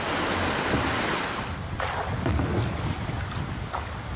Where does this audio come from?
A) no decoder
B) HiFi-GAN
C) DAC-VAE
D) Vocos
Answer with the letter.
A